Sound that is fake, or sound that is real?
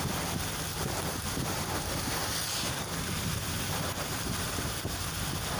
real